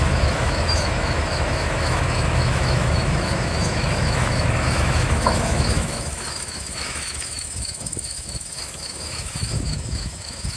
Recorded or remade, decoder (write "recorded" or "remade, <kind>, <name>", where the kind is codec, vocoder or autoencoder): remade, autoencoder, DAC-VAE